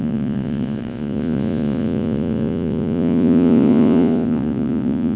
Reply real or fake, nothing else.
fake